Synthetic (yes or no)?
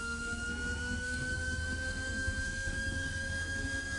yes